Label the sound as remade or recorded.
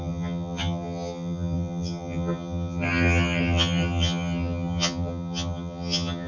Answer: remade